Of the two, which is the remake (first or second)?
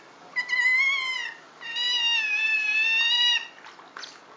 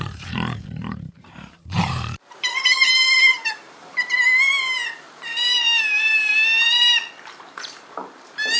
second